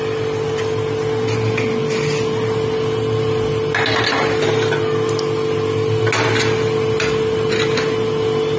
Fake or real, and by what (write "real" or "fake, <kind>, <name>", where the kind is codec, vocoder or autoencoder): real